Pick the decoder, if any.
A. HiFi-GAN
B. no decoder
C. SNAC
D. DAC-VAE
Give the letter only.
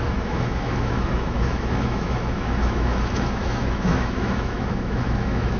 D